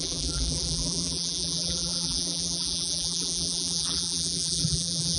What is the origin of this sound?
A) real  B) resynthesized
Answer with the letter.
B